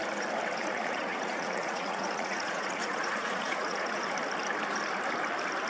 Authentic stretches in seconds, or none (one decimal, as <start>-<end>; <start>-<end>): 0.0-0.6; 4.0-5.7